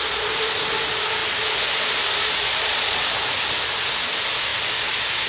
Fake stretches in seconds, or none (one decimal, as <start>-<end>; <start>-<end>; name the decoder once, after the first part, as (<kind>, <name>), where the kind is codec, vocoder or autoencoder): 2.5-3.0 (vocoder, Vocos)